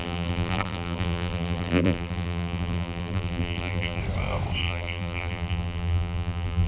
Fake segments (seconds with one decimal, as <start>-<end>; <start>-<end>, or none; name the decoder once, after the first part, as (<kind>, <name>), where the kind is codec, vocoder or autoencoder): 0.0-4.0 (vocoder, BigVGAN v2); 4.6-6.7

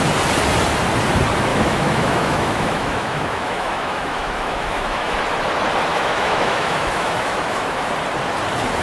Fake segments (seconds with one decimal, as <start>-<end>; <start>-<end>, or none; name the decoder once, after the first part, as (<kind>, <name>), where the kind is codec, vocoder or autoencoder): 1.5-5.2 (autoencoder, DAC-VAE); 5.9-7.9

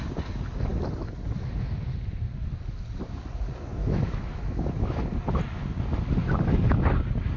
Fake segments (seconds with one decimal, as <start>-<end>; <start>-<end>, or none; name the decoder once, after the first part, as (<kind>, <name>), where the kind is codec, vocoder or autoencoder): 3.8-5.0 (autoencoder, DAC-VAE)

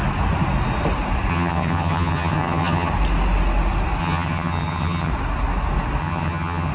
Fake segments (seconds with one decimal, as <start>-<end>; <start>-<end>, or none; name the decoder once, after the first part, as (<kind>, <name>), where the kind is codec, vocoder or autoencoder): 1.3-2.9 (vocoder, HiFi-GAN); 4.0-5.1; 6.0-6.7

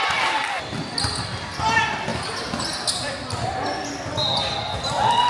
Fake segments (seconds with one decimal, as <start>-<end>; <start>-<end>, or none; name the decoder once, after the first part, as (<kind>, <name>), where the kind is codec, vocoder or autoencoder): none

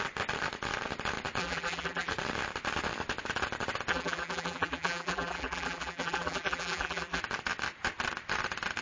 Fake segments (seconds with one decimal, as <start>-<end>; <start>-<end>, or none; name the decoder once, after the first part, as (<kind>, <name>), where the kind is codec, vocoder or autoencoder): 1.4-2.1 (vocoder, BigVGAN v2); 3.9-7.2

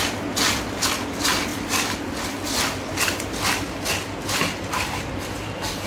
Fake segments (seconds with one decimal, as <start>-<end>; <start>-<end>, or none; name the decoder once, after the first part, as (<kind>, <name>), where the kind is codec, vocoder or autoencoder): 1.5-2.3 (vocoder, BigVGAN v2); 4.4-5.9

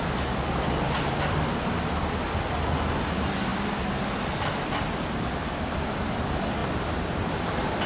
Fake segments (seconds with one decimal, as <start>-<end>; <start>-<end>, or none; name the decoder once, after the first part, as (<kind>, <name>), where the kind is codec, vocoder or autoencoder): none